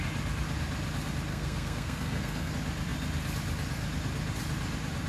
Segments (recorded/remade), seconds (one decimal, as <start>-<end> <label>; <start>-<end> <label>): 0.0-1.3 recorded; 1.3-2.5 remade; 2.5-5.1 recorded

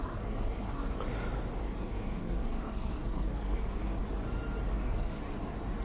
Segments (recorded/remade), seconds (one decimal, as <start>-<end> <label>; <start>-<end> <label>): 0.0-0.9 remade; 0.9-1.6 recorded; 1.6-4.0 remade; 4.0-4.7 recorded; 4.7-5.2 remade; 5.2-5.8 recorded

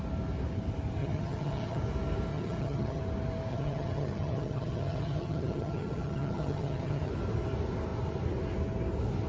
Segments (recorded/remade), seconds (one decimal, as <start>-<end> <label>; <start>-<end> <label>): 0.0-1.0 recorded; 1.0-1.8 remade; 1.8-2.3 recorded; 2.3-3.0 remade; 3.0-3.5 recorded; 3.5-7.1 remade; 7.1-9.3 recorded

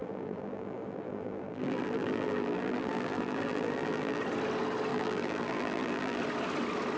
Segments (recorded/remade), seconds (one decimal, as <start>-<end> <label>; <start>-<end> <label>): 0.0-4.2 remade; 4.2-4.9 recorded; 4.9-6.2 remade; 6.2-7.0 recorded

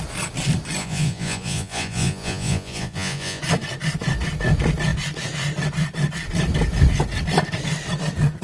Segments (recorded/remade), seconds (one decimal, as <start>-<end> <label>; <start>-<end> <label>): 0.0-0.8 recorded; 0.8-3.4 remade; 3.4-8.4 recorded

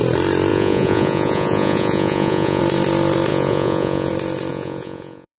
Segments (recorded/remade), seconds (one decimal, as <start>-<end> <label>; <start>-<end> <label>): 0.0-0.5 recorded; 0.5-2.6 remade; 2.6-3.3 recorded; 3.3-4.1 remade; 4.1-4.5 recorded; 4.5-5.4 remade

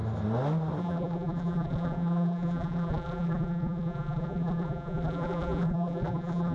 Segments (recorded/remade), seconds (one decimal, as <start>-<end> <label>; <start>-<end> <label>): 0.0-0.8 recorded; 0.8-6.5 remade

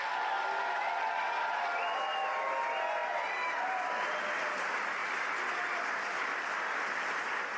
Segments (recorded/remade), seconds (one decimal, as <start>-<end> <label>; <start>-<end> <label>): 0.0-7.6 recorded